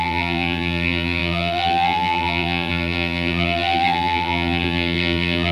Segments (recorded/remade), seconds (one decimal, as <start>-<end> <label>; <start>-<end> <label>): 0.0-5.5 remade